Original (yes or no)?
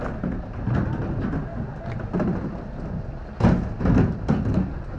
yes